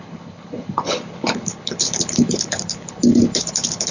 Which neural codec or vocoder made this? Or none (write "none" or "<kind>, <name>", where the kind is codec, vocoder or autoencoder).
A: codec, HILCodec